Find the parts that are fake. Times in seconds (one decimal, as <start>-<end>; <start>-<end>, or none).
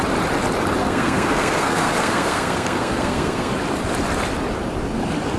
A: 0.8-3.5